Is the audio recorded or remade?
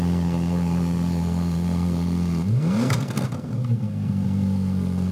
remade